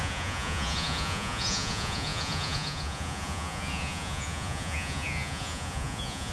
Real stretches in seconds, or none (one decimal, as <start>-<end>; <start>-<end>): none